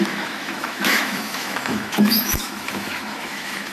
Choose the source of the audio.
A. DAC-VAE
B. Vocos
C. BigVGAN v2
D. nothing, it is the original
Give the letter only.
A